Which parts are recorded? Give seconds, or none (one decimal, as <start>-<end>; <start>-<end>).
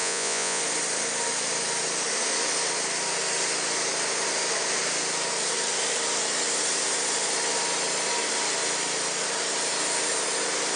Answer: 0.6-10.8